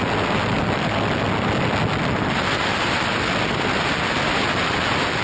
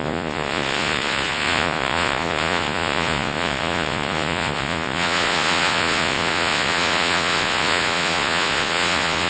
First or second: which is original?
first